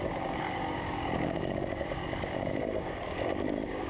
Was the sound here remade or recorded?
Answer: remade